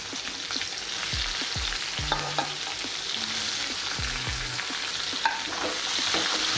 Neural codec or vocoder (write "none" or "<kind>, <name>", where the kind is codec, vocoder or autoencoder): none